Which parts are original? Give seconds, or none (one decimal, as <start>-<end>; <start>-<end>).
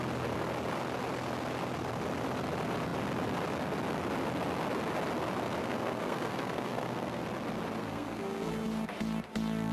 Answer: 0.0-5.6; 7.2-7.8; 8.5-9.7